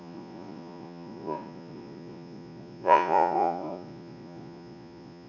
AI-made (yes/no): yes